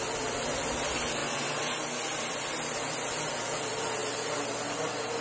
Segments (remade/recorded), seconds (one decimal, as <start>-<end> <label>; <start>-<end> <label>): 0.0-1.2 recorded; 1.2-3.3 remade; 3.3-4.0 recorded; 4.0-5.2 remade